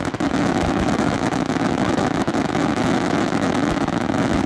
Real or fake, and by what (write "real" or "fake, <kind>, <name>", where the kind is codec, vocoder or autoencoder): fake, autoencoder, DAC-VAE